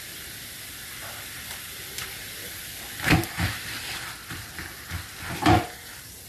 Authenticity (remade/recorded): remade